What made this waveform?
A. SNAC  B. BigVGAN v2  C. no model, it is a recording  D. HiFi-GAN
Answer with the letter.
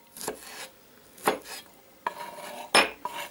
C